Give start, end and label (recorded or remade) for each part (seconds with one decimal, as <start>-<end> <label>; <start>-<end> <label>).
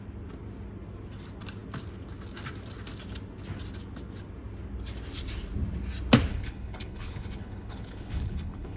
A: 0.0-6.3 recorded; 6.3-8.8 remade